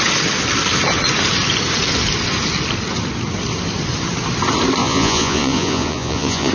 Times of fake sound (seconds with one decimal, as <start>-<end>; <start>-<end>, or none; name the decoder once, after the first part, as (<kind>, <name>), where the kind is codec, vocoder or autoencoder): 4.8-6.5 (vocoder, Vocos)